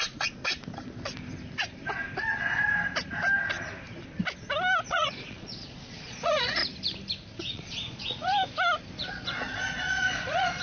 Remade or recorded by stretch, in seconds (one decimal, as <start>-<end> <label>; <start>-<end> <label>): 0.0-0.4 remade; 0.4-4.9 recorded; 4.9-6.6 remade; 6.6-7.4 recorded; 7.4-8.3 remade; 8.3-9.0 recorded; 9.0-10.6 remade